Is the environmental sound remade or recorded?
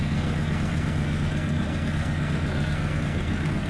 remade